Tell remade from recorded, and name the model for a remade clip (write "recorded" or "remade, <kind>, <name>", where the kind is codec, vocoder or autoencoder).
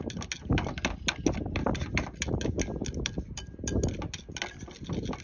recorded